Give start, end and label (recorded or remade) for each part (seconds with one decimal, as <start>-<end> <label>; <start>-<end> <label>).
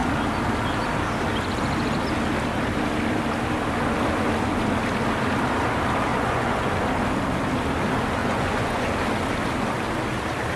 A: 0.0-6.1 recorded; 6.1-6.7 remade; 6.7-8.2 recorded; 8.2-8.9 remade; 8.9-10.6 recorded